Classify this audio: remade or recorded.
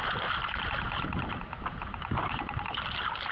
recorded